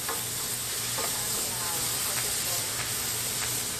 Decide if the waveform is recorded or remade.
recorded